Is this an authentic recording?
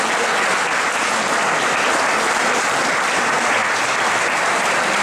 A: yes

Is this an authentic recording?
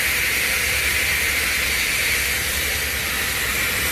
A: yes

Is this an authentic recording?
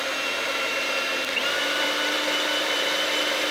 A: no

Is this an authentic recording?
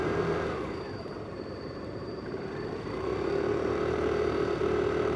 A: no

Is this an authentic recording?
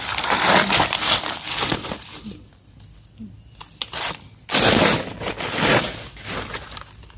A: yes